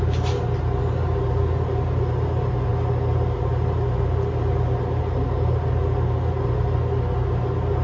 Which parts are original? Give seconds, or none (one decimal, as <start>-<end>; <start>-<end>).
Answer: 0.0-7.8